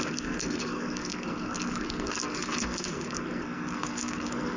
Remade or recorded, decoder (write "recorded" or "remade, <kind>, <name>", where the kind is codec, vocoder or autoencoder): remade, codec, SNAC